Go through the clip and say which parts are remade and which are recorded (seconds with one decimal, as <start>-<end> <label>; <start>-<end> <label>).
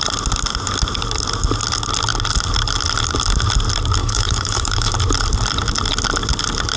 0.0-4.0 recorded; 4.0-4.9 remade; 4.9-6.8 recorded